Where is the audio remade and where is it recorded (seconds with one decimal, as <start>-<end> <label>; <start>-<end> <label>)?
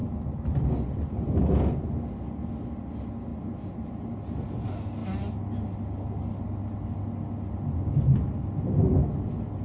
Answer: 0.0-3.3 recorded; 3.3-4.1 remade; 4.1-9.6 recorded